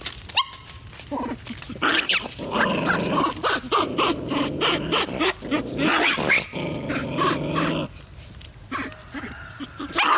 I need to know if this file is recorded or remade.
recorded